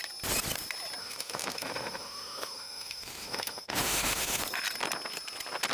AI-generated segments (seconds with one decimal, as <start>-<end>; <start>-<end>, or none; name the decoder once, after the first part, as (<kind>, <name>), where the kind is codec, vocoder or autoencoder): 1.0-4.4 (autoencoder, DAC-VAE)